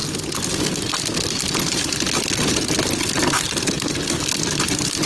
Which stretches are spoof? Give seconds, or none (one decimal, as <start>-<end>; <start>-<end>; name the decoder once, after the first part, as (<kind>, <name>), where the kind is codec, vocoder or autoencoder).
none